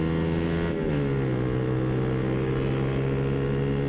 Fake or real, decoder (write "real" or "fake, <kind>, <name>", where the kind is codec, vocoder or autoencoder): real